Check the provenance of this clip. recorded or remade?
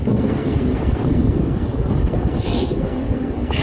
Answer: remade